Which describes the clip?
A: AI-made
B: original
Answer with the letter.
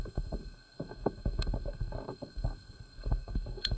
A